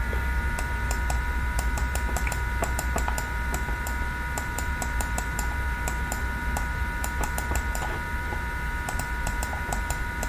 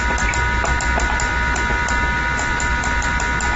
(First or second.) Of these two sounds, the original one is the second